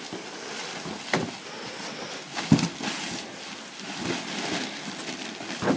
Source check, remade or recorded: recorded